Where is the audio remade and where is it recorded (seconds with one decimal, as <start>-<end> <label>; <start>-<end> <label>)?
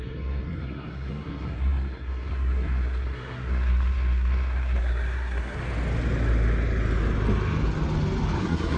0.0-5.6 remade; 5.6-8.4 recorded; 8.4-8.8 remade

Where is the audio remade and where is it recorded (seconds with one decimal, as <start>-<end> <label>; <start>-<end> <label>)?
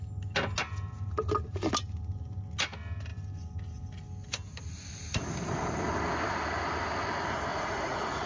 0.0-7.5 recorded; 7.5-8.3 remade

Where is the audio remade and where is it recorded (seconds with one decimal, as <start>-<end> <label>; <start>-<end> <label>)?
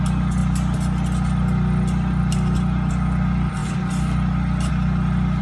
0.0-5.4 recorded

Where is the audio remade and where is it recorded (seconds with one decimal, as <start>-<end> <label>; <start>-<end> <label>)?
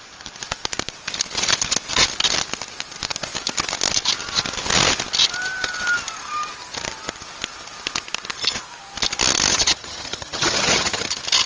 0.0-9.5 recorded; 9.5-11.1 remade; 11.1-11.5 recorded